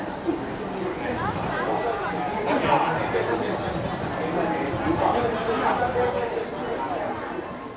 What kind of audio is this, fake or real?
real